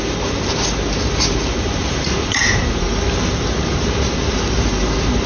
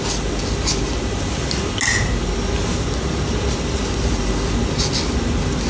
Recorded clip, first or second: second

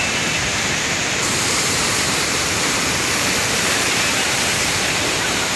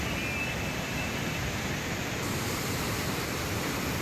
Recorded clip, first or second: second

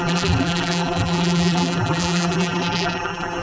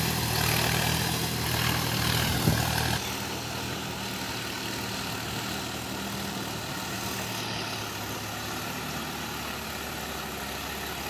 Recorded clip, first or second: second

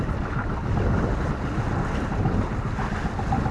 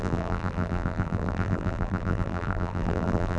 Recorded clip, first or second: first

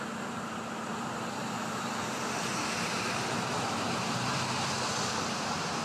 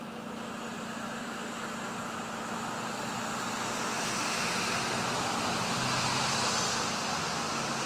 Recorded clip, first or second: second